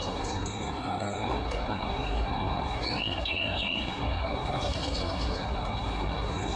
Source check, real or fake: fake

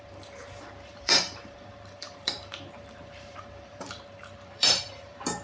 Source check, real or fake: fake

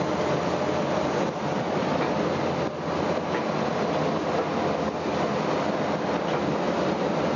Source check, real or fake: real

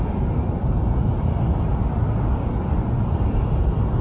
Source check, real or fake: real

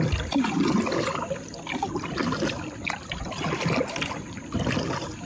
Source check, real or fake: fake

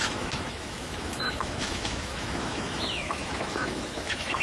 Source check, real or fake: fake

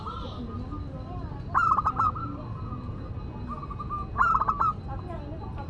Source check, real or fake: real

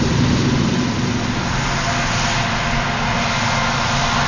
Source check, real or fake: real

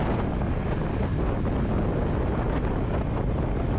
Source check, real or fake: real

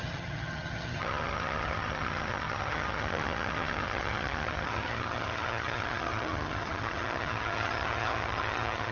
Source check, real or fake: fake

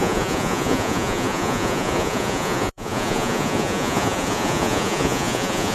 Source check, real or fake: fake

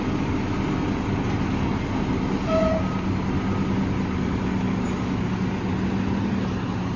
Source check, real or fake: real